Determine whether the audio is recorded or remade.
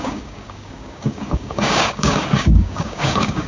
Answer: remade